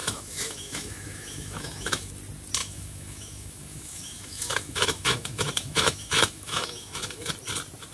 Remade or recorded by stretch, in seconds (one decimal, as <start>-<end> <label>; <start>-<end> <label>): 0.0-2.1 remade; 2.1-2.6 recorded; 2.6-7.3 remade; 7.3-7.9 recorded